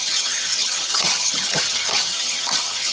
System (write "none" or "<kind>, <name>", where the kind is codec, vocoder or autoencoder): vocoder, HiFi-GAN